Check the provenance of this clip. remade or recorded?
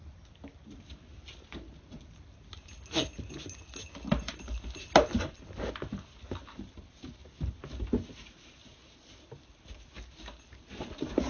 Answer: recorded